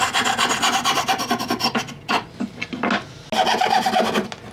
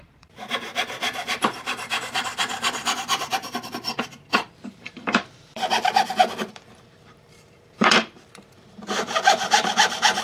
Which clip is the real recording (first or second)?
first